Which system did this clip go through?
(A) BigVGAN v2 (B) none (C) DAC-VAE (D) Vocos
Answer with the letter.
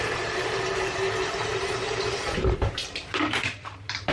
A